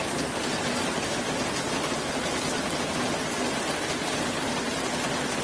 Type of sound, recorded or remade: recorded